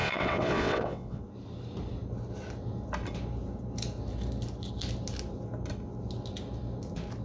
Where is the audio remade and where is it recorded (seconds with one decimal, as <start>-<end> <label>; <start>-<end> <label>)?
0.0-1.2 remade; 1.2-7.2 recorded